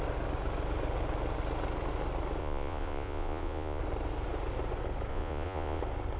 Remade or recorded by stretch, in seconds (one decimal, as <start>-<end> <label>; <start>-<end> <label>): 0.0-2.4 recorded; 2.4-3.8 remade; 3.8-5.1 recorded; 5.1-5.8 remade; 5.8-6.2 recorded